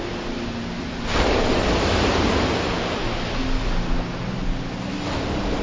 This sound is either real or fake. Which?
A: real